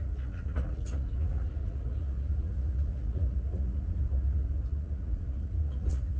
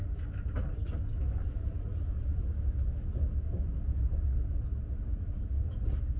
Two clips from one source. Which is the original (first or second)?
second